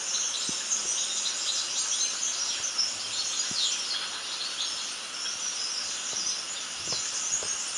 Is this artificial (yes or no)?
no